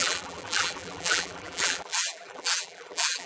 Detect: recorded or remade remade